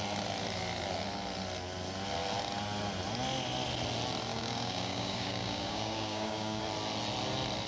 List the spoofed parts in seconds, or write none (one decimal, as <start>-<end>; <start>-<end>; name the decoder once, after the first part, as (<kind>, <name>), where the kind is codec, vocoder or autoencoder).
4.3-6.6 (codec, DAC)